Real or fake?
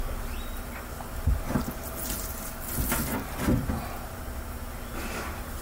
real